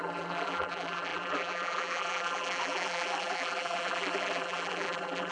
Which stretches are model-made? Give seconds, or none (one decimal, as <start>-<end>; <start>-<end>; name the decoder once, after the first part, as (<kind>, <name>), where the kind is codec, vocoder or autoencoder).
0.0-5.3 (vocoder, BigVGAN v2)